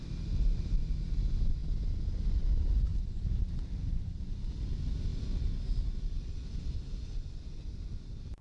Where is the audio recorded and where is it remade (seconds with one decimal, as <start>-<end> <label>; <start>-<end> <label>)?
0.0-2.9 recorded; 2.9-4.2 remade; 4.2-8.4 recorded